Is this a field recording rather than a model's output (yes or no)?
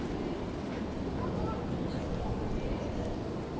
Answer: yes